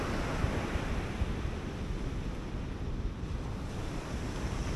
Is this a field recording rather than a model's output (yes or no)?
yes